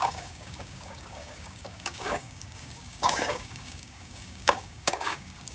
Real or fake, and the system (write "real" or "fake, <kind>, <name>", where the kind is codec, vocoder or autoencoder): fake, codec, DAC